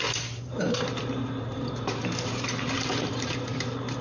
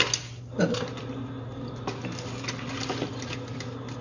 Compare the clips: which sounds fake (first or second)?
first